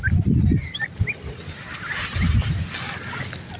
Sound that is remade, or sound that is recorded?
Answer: recorded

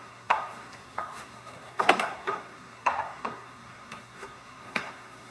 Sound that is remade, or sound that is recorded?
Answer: remade